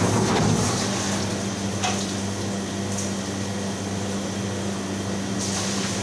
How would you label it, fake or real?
real